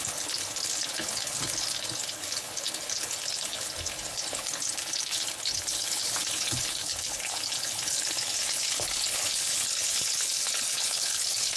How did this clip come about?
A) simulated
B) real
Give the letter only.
A